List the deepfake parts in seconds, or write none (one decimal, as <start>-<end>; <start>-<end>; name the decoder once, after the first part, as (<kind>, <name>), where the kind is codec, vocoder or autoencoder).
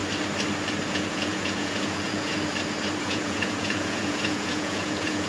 0.9-2.3 (vocoder, Vocos); 3.0-5.3